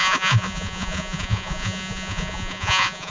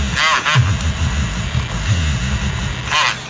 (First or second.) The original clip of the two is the second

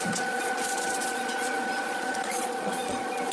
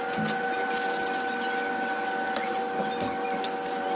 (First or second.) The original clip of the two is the second